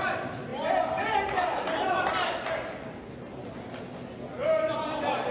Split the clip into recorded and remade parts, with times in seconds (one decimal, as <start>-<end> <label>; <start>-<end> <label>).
0.0-5.3 recorded